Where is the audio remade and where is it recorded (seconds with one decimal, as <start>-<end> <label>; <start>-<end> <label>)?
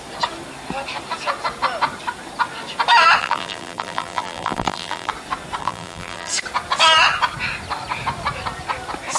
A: 0.0-3.2 recorded; 3.2-5.1 remade; 5.1-5.6 recorded; 5.6-6.3 remade; 6.3-9.2 recorded